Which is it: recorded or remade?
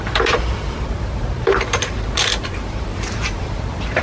remade